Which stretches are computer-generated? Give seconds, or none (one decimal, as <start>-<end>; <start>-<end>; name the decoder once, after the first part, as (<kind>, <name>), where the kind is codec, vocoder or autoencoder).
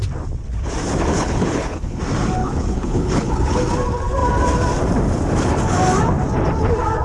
1.1-2.0 (codec, HILCodec); 2.4-3.6